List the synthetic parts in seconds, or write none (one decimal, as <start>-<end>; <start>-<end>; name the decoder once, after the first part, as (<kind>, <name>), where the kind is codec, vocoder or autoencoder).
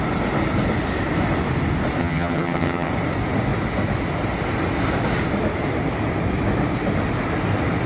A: 2.0-2.9 (vocoder, HiFi-GAN)